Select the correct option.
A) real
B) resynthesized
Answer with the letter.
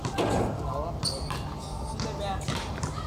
A